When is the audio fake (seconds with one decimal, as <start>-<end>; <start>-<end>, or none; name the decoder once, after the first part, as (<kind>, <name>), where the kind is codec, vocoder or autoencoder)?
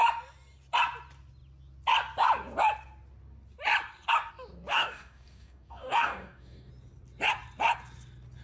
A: 4.7-6.7 (codec, DAC)